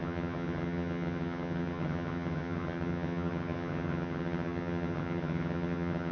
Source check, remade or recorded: remade